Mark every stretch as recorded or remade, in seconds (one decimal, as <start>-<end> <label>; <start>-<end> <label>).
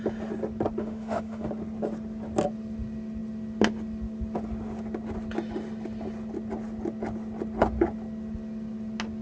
0.0-0.8 recorded; 0.8-1.5 remade; 1.5-9.2 recorded